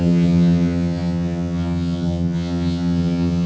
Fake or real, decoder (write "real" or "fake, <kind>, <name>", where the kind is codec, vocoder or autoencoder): fake, vocoder, HiFi-GAN